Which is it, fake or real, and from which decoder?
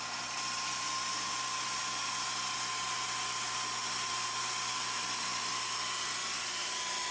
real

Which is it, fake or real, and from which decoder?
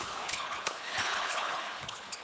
fake, codec, HILCodec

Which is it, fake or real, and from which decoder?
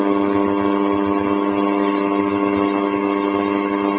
real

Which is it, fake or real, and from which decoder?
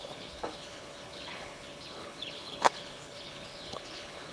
fake, codec, HILCodec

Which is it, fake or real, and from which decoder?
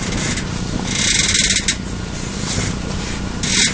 real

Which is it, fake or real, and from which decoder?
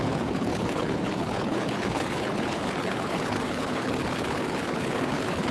fake, codec, HILCodec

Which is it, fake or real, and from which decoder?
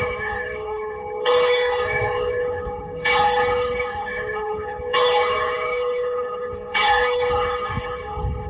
fake, codec, HILCodec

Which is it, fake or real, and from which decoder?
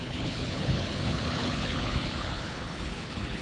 fake, codec, HILCodec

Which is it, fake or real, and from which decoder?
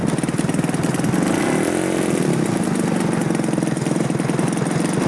real